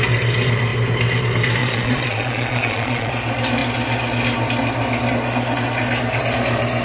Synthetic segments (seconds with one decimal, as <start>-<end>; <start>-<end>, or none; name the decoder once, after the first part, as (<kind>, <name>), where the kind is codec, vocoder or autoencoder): 1.6-3.1 (vocoder, Vocos)